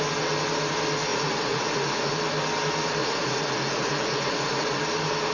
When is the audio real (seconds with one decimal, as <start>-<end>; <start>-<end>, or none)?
0.0-1.1; 2.1-3.0; 4.8-5.3